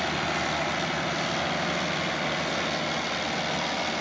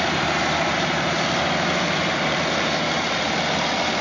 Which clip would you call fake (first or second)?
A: second